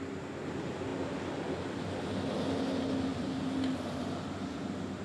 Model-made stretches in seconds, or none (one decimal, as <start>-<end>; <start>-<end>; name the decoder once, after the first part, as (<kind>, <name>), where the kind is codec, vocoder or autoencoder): none